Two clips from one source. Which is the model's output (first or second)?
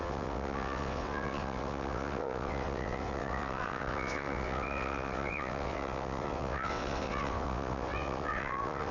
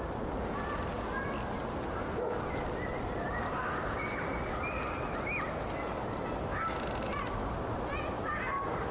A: first